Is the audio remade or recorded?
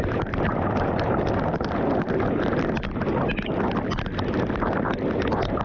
recorded